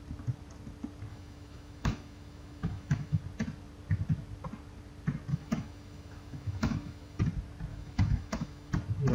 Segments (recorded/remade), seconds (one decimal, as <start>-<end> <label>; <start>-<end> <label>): 0.0-1.1 recorded; 1.1-3.2 remade; 3.2-5.3 recorded; 5.3-7.2 remade; 7.2-7.7 recorded; 7.7-8.7 remade; 8.7-9.1 recorded